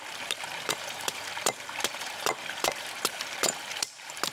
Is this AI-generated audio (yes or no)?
yes